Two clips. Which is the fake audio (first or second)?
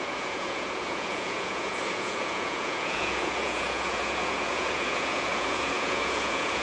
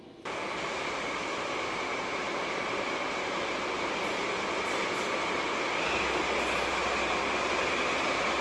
first